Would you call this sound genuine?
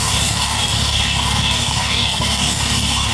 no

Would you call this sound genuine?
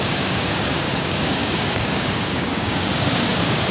no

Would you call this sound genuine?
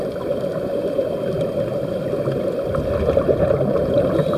yes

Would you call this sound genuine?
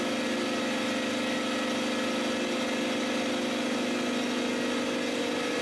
yes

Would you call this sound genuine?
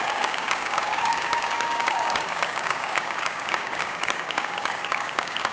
no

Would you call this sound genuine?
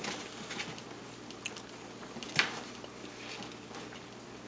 yes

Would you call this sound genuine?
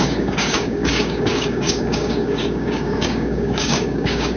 no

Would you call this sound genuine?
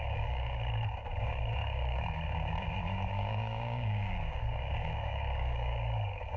no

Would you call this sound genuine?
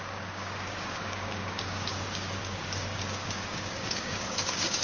no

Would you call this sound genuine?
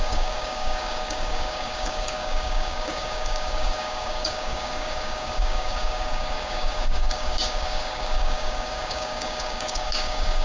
no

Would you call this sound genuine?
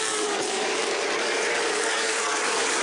no